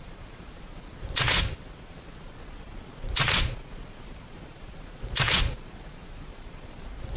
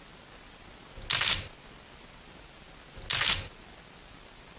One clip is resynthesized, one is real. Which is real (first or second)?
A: second